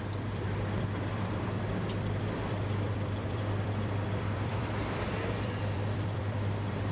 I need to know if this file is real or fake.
fake